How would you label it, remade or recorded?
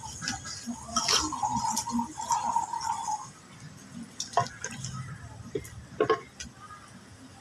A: recorded